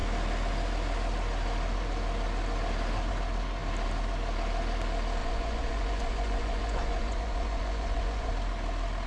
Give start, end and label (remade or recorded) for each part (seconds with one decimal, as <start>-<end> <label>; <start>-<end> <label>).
0.0-5.2 recorded; 5.2-8.3 remade; 8.3-9.1 recorded

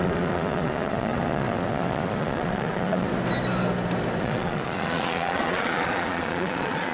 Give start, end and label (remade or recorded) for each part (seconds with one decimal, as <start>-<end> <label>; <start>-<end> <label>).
0.0-3.1 remade; 3.1-4.2 recorded; 4.2-6.9 remade